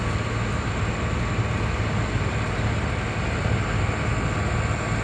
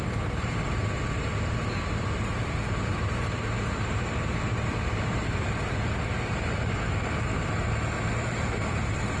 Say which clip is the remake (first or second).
second